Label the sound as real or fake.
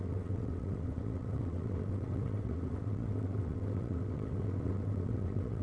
fake